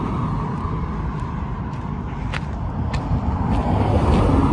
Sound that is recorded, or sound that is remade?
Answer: recorded